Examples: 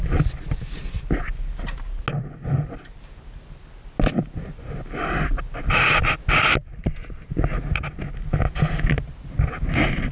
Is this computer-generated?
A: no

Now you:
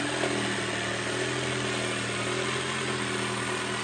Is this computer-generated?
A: no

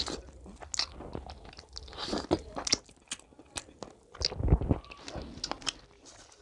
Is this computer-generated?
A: no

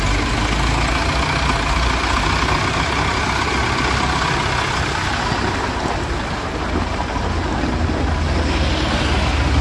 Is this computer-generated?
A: no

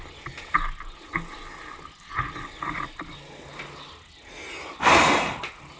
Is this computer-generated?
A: no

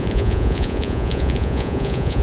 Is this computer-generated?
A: yes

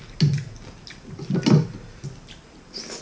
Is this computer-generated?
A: no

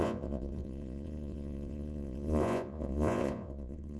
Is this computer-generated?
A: yes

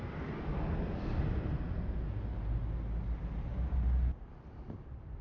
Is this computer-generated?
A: no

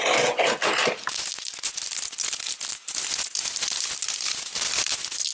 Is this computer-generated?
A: no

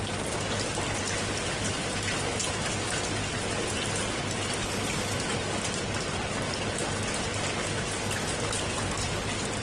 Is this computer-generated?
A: no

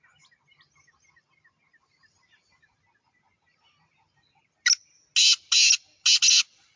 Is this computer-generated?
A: no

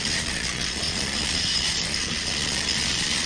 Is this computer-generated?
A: yes